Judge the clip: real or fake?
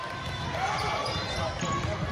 real